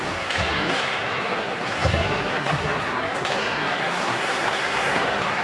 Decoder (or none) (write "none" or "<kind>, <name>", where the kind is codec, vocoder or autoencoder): codec, SNAC